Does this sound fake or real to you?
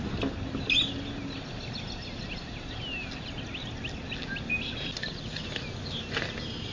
real